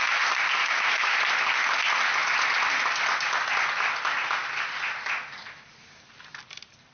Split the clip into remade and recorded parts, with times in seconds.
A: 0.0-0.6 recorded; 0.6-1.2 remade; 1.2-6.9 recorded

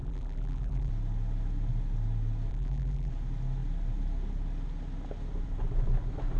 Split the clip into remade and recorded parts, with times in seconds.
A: 0.0-0.9 remade; 0.9-2.5 recorded; 2.5-3.1 remade; 3.1-6.4 recorded

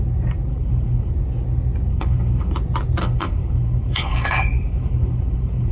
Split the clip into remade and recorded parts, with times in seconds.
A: 0.0-0.5 recorded; 0.5-1.1 remade; 1.1-1.9 recorded; 1.9-2.5 remade; 2.5-3.0 recorded; 3.0-5.7 remade

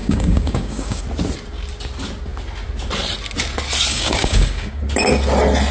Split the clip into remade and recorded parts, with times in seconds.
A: 0.0-1.0 remade; 1.0-3.9 recorded; 3.9-4.8 remade; 4.8-5.7 recorded

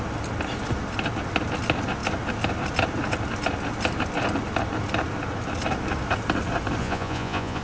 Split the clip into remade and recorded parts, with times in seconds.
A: 0.0-6.8 recorded; 6.8-7.6 remade

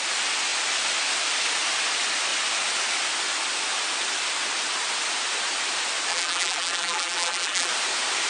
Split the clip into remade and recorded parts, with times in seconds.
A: 0.0-6.1 recorded; 6.1-7.7 remade; 7.7-8.3 recorded

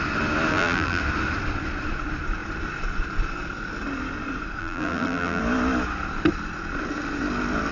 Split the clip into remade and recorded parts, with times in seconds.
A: 0.0-0.5 recorded; 0.5-1.0 remade; 1.0-4.6 recorded; 4.6-5.4 remade; 5.4-7.7 recorded

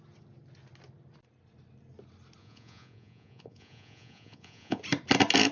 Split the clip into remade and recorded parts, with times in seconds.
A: 0.0-2.4 recorded; 2.4-4.8 remade; 4.8-5.5 recorded